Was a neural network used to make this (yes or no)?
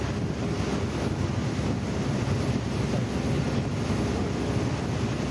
no